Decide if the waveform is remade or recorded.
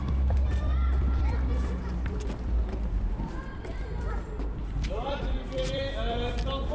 remade